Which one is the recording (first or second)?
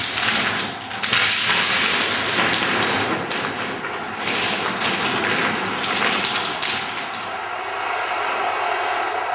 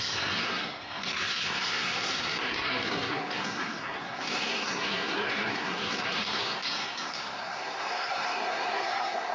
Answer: first